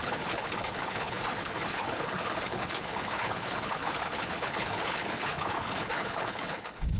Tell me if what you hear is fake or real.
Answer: fake